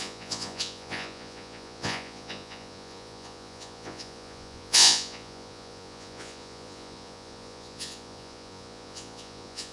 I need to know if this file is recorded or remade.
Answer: remade